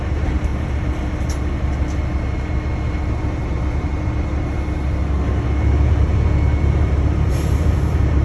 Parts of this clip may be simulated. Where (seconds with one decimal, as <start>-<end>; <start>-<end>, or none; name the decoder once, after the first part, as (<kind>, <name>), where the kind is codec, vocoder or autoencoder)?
0.0-0.5 (vocoder, BigVGAN v2); 2.9-3.9; 6.6-8.2